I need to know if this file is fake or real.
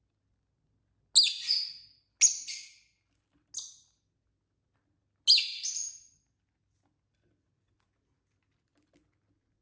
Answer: real